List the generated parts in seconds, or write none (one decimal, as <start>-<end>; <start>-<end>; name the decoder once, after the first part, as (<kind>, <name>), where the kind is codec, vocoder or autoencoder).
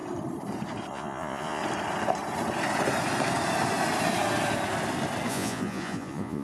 0.9-1.6 (vocoder, Vocos); 5.3-6.4